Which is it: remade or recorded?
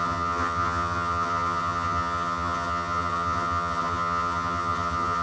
remade